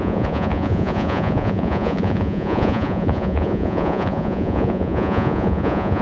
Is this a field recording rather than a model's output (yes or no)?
no